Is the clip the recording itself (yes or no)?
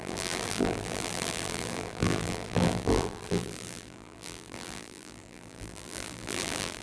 no